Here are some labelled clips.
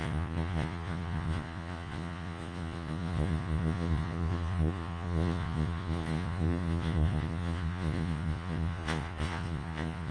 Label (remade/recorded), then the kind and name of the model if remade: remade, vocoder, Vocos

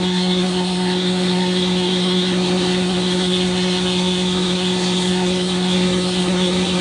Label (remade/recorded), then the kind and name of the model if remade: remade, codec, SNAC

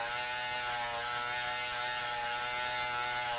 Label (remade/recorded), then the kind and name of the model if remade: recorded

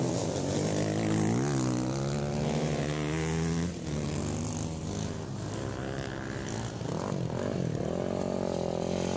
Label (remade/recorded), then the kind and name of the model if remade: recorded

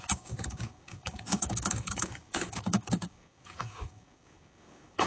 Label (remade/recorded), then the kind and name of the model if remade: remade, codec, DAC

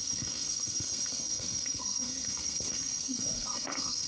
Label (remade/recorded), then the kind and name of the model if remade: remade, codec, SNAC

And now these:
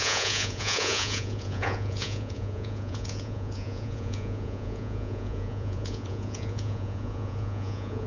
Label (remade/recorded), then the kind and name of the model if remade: remade, vocoder, Vocos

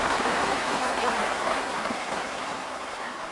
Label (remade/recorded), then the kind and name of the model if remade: remade, codec, SNAC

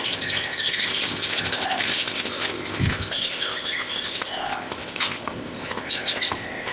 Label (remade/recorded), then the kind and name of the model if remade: remade, codec, ZipCodec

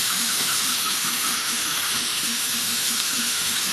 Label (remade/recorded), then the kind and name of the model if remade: remade, autoencoder, DAC-VAE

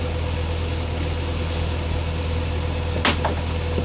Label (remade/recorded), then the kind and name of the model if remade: recorded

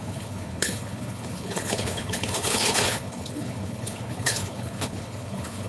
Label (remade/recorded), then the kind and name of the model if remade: remade, codec, HILCodec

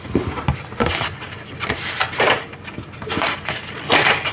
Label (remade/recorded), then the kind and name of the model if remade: recorded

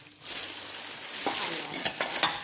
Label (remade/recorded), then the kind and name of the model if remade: recorded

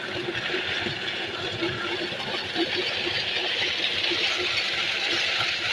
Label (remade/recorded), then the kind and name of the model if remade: recorded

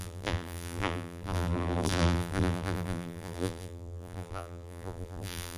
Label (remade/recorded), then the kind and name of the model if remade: remade, vocoder, BigVGAN v2